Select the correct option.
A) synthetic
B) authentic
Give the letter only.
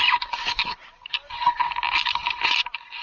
B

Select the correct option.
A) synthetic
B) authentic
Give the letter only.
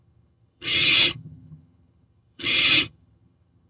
A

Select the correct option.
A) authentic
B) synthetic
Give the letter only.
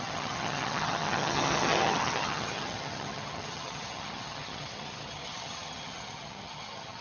B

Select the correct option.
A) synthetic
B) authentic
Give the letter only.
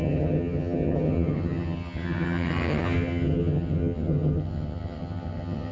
A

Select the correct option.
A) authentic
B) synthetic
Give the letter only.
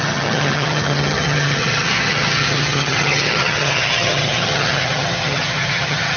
B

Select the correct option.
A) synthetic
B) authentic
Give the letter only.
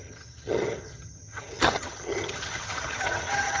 A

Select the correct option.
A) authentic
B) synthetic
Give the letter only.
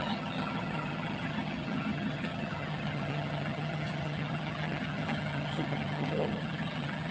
B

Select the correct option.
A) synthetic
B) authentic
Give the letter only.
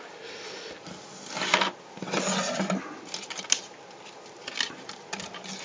B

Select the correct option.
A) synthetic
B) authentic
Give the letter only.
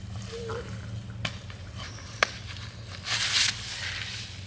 B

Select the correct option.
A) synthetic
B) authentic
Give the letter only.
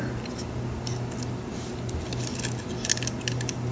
B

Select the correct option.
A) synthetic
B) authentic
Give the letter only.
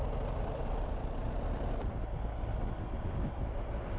B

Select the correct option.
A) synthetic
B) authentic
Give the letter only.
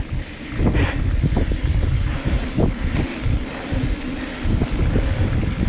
B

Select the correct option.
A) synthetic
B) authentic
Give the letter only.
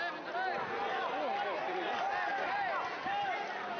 B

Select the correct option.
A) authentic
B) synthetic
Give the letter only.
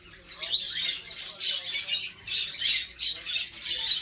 A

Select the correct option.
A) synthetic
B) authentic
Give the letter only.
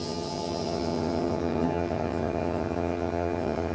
A